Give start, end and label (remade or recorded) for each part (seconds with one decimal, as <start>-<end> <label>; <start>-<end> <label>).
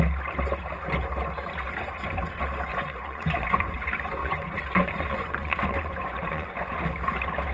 0.0-2.7 recorded; 2.7-3.7 remade; 3.7-4.2 recorded; 4.2-6.7 remade; 6.7-7.5 recorded